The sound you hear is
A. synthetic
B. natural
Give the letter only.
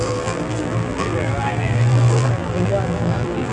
A